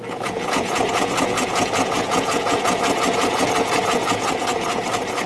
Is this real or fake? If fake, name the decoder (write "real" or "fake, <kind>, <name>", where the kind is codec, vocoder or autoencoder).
fake, vocoder, Vocos